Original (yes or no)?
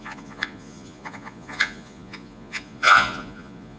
no